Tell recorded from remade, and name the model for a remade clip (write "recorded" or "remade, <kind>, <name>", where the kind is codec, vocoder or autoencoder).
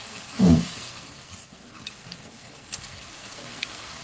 remade, codec, SNAC